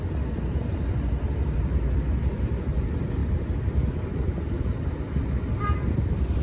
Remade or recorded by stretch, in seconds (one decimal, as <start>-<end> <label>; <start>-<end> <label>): 0.0-6.4 remade